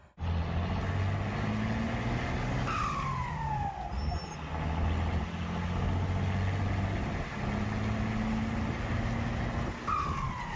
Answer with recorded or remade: recorded